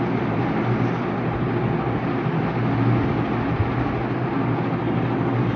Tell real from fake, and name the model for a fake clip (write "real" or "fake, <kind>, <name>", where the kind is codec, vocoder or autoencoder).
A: real